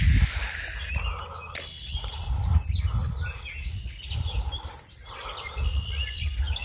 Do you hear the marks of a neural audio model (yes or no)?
no